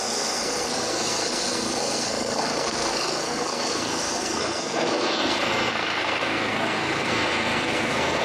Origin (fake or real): fake